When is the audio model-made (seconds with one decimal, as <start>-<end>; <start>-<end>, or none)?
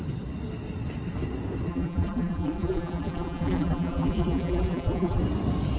1.7-5.2